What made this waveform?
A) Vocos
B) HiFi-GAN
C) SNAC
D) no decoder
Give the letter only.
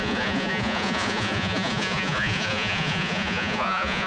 A